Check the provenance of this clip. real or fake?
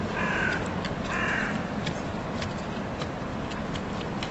real